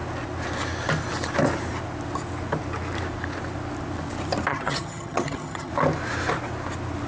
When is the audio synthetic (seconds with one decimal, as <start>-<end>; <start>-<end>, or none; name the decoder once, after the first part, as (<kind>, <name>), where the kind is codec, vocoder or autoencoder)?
4.5-5.7 (vocoder, HiFi-GAN)